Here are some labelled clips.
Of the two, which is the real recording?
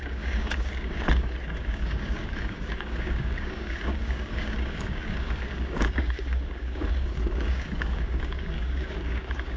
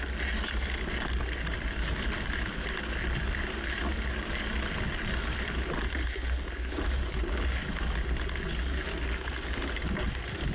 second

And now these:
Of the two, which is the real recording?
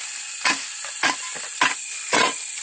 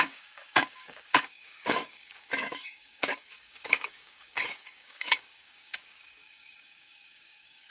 first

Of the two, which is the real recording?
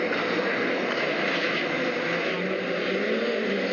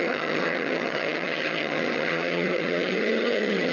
first